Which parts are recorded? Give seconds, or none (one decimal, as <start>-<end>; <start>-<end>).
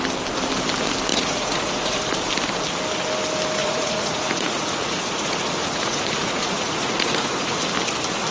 0.0-1.1; 2.0-3.6; 7.6-8.3